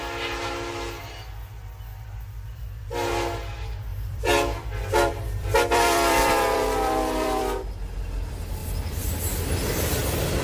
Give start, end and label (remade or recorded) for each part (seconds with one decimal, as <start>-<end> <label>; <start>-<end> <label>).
0.0-1.9 recorded; 1.9-2.6 remade; 2.6-3.9 recorded; 3.9-7.7 remade; 7.7-8.6 recorded; 8.6-9.1 remade; 9.1-10.4 recorded